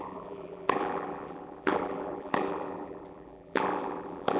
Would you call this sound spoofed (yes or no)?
yes